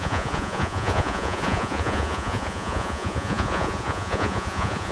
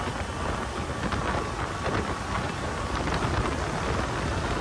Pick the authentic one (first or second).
second